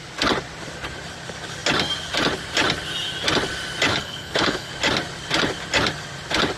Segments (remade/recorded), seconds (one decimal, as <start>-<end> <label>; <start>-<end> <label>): 0.0-3.9 recorded; 3.9-4.7 remade; 4.7-6.6 recorded